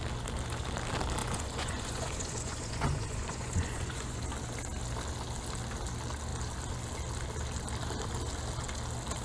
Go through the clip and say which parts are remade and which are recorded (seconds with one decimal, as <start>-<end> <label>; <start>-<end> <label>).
0.0-1.2 recorded; 1.2-4.2 remade; 4.2-9.2 recorded